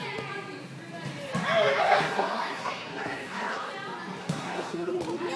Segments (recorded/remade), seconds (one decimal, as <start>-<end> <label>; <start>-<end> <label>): 0.0-1.8 recorded; 1.8-3.7 remade; 3.7-4.2 recorded; 4.2-4.9 remade; 4.9-5.4 recorded